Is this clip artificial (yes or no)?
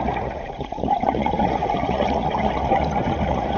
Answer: yes